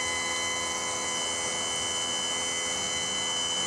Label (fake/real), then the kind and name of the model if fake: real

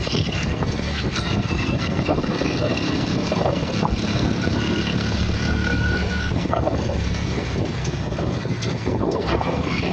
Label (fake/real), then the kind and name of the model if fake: fake, codec, SNAC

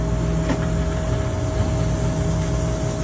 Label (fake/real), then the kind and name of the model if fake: real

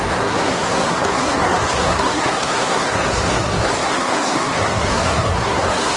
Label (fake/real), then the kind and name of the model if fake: fake, codec, SNAC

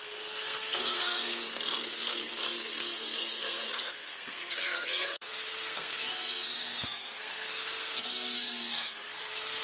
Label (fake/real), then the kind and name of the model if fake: fake, codec, SNAC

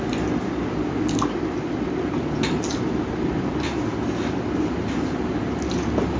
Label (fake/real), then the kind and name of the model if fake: real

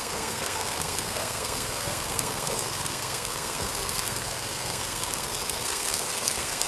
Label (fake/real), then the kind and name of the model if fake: fake, codec, SNAC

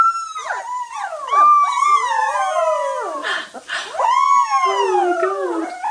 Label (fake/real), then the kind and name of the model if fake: real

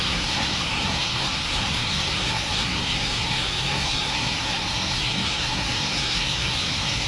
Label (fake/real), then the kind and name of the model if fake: fake, codec, SNAC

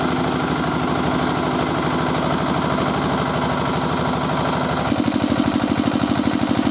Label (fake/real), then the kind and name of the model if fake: real